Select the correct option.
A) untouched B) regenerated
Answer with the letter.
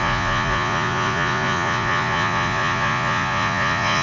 B